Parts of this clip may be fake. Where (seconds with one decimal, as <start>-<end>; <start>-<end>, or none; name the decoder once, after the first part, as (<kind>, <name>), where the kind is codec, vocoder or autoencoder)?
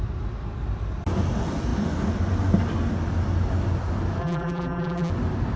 4.2-5.1 (vocoder, BigVGAN v2)